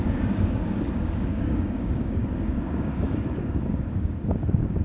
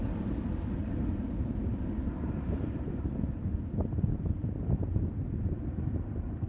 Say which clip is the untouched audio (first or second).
second